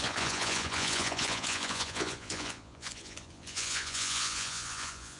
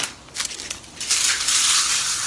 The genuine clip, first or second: second